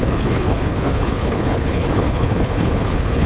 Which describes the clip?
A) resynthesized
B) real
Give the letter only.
A